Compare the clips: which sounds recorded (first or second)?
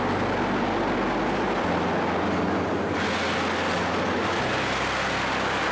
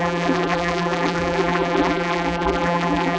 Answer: first